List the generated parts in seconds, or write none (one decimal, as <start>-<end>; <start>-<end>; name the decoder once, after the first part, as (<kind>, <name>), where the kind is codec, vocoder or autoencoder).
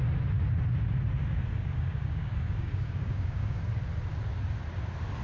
1.6-3.6 (codec, DAC)